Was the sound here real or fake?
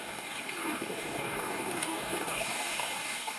fake